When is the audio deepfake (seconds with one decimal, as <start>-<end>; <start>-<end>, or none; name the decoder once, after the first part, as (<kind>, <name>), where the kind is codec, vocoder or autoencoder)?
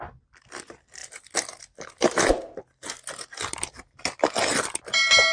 none